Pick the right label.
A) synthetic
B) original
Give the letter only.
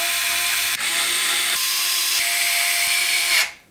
A